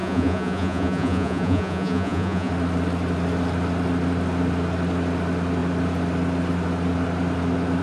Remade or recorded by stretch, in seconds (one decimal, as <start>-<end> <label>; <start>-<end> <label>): 0.0-2.5 remade; 2.5-7.8 recorded